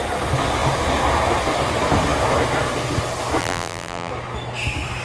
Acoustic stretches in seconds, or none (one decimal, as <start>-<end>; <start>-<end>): 0.0-3.4; 4.1-5.0